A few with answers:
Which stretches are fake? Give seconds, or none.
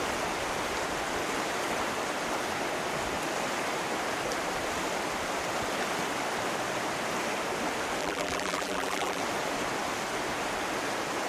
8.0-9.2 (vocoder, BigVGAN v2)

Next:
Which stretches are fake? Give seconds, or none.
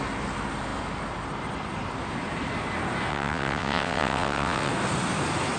3.1-4.7 (vocoder, WaveNeXt)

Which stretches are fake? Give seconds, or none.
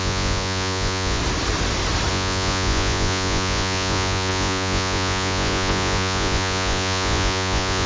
0.0-1.2 (vocoder, Vocos); 2.1-7.9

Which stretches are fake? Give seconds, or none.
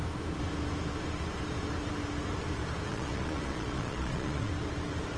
2.9-4.5 (vocoder, Vocos)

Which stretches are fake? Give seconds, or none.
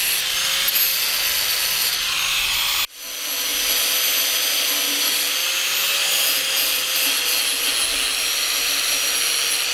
none